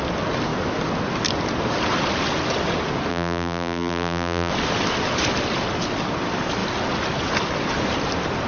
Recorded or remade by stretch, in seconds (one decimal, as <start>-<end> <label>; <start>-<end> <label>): 0.0-3.1 recorded; 3.1-4.5 remade; 4.5-8.5 recorded